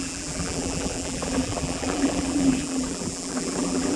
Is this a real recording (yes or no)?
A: no